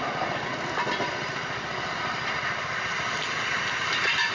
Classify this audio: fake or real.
real